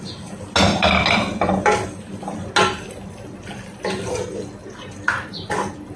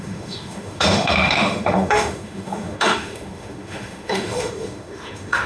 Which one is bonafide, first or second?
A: first